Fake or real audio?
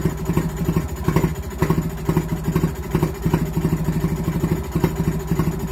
real